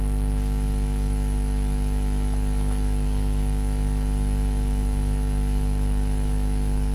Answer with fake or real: fake